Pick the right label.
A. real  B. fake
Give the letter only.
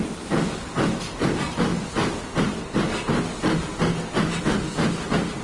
A